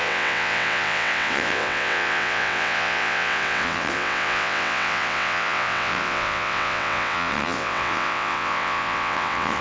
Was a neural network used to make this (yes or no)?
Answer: yes